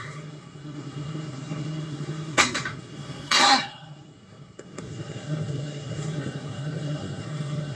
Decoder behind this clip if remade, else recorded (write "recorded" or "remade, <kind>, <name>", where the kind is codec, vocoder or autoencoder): remade, codec, SNAC